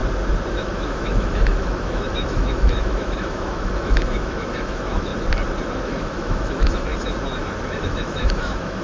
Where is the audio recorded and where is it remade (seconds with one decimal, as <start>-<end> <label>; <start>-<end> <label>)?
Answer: 0.0-0.5 recorded; 0.5-5.1 remade; 5.1-5.7 recorded; 5.7-6.9 remade; 6.9-7.8 recorded; 7.8-8.8 remade